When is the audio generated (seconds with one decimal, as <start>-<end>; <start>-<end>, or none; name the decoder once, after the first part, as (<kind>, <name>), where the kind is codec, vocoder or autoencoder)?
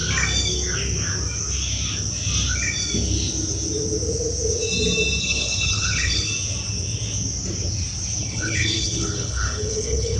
5.2-6.3 (codec, HILCodec); 8.2-10.2